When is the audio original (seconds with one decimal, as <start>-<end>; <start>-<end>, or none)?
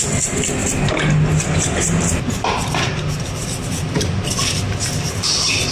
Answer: 0.0-5.7